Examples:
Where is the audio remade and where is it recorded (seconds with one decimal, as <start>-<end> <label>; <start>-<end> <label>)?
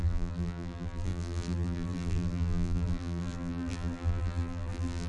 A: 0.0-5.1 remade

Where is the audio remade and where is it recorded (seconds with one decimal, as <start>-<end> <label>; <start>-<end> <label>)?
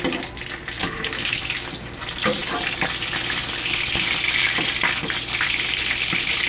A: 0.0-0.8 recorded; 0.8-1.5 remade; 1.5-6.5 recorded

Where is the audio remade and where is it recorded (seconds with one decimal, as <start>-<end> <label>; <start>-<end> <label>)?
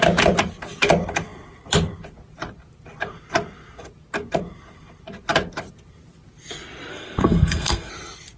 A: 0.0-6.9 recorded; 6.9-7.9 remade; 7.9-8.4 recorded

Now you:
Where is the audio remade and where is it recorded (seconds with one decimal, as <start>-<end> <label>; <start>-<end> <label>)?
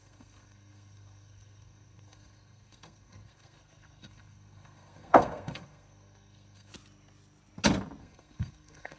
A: 0.0-6.7 remade; 6.7-8.0 recorded; 8.0-9.0 remade